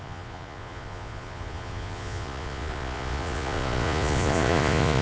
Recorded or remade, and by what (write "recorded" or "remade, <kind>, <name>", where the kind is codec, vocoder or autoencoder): remade, vocoder, Vocos